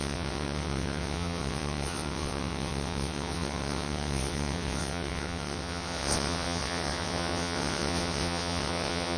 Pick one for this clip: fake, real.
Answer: fake